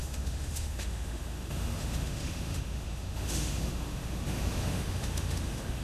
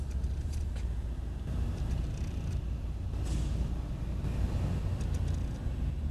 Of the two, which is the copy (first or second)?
first